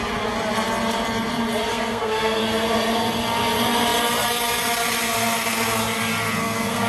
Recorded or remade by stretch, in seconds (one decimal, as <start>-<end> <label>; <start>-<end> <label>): 0.0-1.7 recorded; 1.7-2.4 remade; 2.4-6.4 recorded; 6.4-6.9 remade